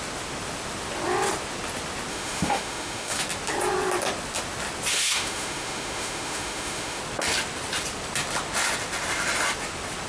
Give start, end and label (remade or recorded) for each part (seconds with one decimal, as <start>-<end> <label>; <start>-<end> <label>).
0.0-2.1 recorded; 2.1-3.2 remade; 3.2-4.9 recorded; 4.9-7.0 remade; 7.0-10.1 recorded